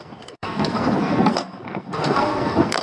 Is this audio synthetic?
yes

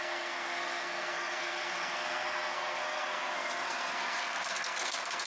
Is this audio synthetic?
yes